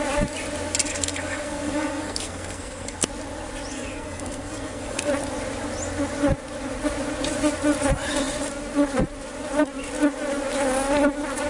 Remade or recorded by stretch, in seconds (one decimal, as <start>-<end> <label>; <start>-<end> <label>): 0.0-0.9 recorded; 0.9-3.1 remade; 3.1-3.7 recorded; 3.7-5.1 remade; 5.1-11.5 recorded